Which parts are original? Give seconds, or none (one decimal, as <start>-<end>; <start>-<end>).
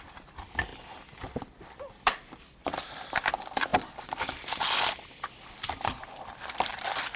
0.7-1.8; 3.7-4.2